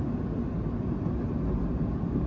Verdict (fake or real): real